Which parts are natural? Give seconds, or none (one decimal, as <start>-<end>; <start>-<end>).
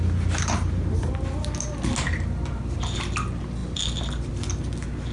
0.0-3.6; 4.3-5.1